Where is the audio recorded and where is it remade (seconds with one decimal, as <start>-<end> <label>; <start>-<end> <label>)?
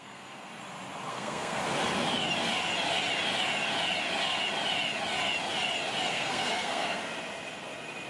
0.0-0.5 remade; 0.5-1.1 recorded; 1.1-1.6 remade; 1.6-6.1 recorded; 6.1-7.0 remade; 7.0-8.1 recorded